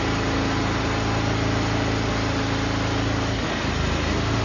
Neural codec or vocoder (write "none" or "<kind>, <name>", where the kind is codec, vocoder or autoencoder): none